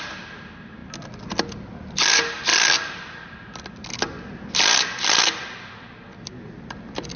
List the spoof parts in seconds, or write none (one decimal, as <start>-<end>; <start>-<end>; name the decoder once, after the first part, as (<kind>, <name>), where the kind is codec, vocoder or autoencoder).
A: 0.0-0.8 (vocoder, BigVGAN v2); 1.8-7.2